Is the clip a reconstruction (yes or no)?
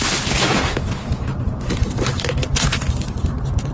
no